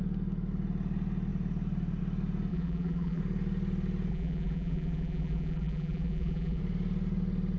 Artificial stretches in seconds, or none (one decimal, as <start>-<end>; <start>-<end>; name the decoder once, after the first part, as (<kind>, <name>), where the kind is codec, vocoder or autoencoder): 2.5-3.2 (vocoder, BigVGAN v2); 4.1-6.6